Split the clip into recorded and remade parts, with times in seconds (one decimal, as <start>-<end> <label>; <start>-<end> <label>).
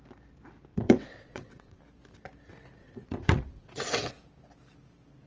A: 0.0-0.7 recorded; 0.7-1.8 remade; 1.8-2.8 recorded; 2.8-4.1 remade; 4.1-5.3 recorded